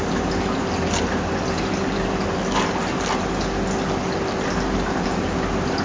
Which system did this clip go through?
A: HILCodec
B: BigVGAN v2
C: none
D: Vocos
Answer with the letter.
C